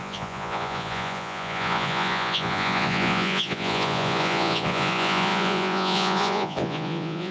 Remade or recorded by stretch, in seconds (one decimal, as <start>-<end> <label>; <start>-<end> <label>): 0.0-7.3 remade